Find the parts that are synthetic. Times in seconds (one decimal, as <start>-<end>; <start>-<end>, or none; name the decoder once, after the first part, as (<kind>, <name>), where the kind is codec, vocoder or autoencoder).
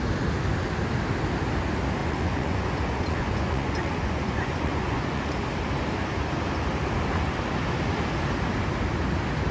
2.0-5.2 (vocoder, Vocos)